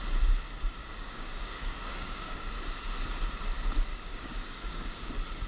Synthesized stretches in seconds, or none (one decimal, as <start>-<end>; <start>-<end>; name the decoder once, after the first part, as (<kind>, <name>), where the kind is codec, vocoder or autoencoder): 0.8-2.5 (codec, DAC); 3.9-5.1